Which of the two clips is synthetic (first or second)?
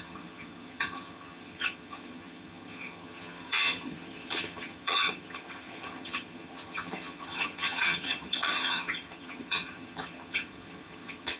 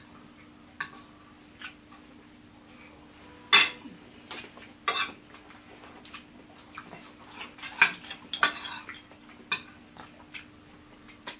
first